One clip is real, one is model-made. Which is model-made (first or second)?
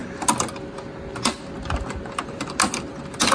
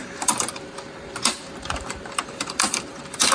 second